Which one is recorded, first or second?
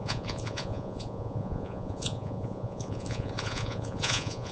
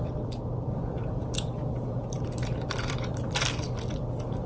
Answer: second